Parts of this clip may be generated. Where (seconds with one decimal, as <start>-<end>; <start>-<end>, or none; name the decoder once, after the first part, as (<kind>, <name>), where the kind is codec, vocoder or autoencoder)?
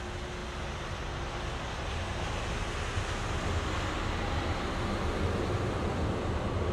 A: none